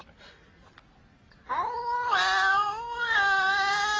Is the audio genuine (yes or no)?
yes